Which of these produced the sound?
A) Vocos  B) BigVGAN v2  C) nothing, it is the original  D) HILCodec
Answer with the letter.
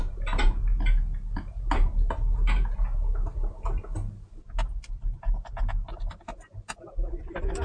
C